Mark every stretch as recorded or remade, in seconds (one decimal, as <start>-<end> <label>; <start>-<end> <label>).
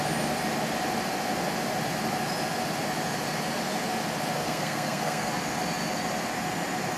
0.0-4.4 recorded; 4.4-5.3 remade; 5.3-7.0 recorded